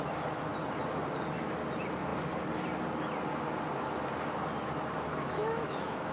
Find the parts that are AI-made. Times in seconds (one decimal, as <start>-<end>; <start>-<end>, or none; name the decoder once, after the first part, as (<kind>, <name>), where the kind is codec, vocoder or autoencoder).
5.1-6.1 (autoencoder, DAC-VAE)